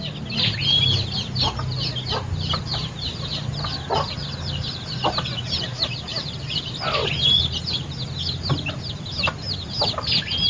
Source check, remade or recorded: recorded